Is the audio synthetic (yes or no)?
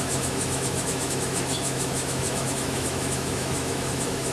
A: yes